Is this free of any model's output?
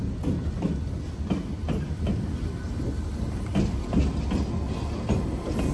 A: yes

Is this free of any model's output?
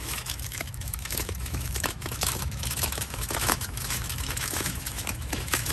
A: no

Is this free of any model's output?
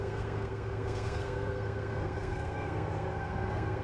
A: no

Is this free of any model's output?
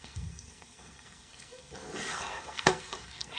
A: no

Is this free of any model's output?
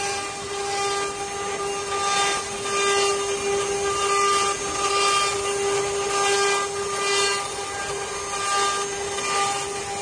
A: yes